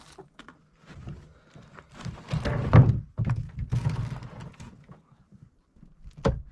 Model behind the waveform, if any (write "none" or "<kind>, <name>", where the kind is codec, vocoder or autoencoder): none